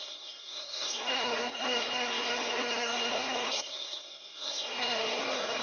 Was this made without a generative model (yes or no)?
no